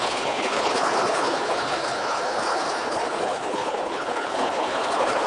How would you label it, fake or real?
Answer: fake